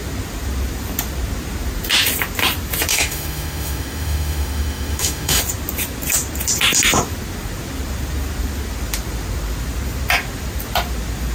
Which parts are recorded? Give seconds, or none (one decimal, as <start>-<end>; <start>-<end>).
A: 0.0-2.9; 5.4-11.3